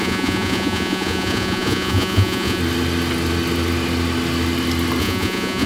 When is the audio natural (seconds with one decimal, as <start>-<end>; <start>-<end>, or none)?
2.6-5.0